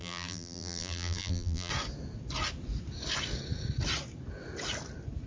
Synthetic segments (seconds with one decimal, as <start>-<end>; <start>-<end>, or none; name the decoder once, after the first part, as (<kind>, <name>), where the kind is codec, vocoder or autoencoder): 0.0-1.7 (vocoder, BigVGAN v2)

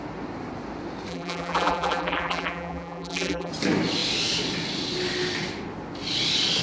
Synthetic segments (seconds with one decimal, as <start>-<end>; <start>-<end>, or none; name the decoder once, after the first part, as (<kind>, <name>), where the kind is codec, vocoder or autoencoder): 1.1-3.5 (vocoder, BigVGAN v2)

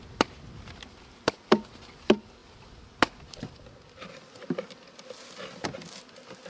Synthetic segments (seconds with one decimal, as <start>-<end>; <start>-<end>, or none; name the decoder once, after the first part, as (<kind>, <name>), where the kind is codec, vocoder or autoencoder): none

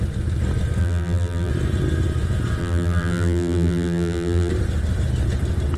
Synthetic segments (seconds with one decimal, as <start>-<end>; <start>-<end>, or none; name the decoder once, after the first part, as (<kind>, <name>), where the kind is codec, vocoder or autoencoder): 0.8-1.5 (vocoder, BigVGAN v2); 2.6-4.5